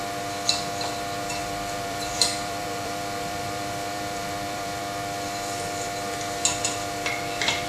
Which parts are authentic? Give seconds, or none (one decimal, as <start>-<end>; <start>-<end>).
0.0-1.4; 4.8-7.7